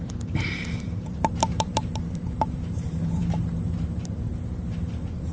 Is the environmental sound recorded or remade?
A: remade